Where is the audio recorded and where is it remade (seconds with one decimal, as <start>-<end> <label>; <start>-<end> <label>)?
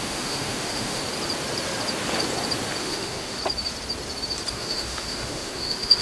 0.0-1.0 remade; 1.0-2.8 recorded; 2.8-3.4 remade; 3.4-4.5 recorded; 4.5-6.0 remade